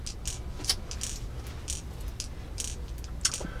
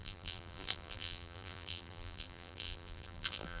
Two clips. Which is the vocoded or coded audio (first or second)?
second